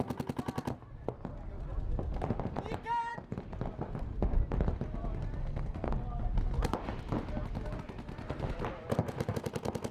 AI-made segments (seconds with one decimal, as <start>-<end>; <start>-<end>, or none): 5.4-5.9